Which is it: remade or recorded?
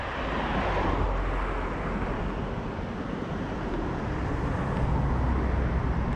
recorded